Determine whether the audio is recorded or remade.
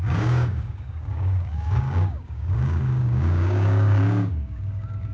remade